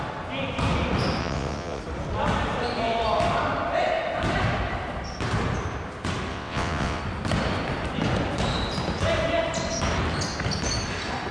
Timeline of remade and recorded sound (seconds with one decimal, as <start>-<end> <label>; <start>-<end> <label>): 0.0-1.2 recorded; 1.2-1.8 remade; 1.8-6.3 recorded; 6.3-7.0 remade; 7.0-11.3 recorded